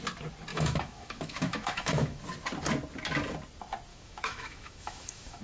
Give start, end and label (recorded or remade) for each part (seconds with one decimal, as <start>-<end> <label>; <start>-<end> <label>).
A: 0.0-0.5 recorded; 0.5-2.2 remade; 2.2-3.9 recorded; 3.9-5.4 remade